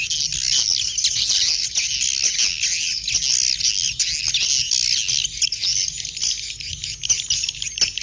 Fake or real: real